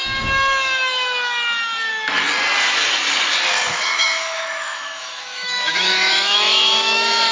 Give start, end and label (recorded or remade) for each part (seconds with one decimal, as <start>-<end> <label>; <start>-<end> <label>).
0.0-3.7 recorded; 3.7-7.3 remade